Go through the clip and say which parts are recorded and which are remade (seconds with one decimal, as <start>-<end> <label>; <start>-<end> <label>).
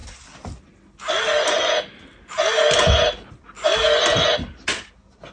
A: 0.0-5.3 recorded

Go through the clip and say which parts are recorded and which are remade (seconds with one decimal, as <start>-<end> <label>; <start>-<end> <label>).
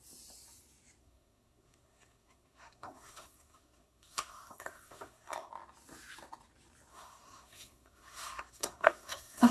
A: 0.0-1.0 recorded; 1.0-5.5 remade; 5.5-6.9 recorded; 6.9-9.5 remade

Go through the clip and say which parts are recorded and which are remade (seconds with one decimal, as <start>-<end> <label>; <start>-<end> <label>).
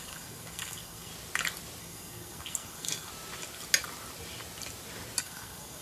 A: 0.0-1.1 remade; 1.1-1.8 recorded; 1.8-3.1 remade; 3.1-5.2 recorded; 5.2-5.8 remade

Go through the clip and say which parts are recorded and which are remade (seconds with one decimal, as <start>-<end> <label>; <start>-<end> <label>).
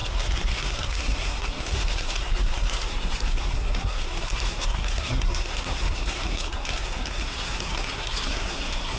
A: 0.0-9.0 remade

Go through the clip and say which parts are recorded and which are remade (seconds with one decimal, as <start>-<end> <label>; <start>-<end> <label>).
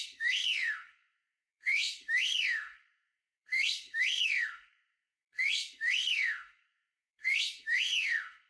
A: 0.0-8.5 remade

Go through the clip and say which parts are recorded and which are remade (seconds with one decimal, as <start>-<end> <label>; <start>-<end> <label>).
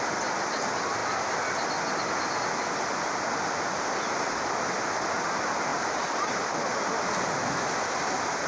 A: 0.0-5.7 recorded; 5.7-6.5 remade; 6.5-8.5 recorded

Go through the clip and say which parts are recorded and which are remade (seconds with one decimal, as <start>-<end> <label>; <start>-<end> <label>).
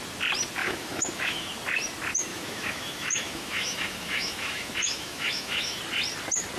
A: 0.0-0.6 recorded; 0.6-1.5 remade; 1.5-2.3 recorded; 2.3-5.8 remade; 5.8-6.6 recorded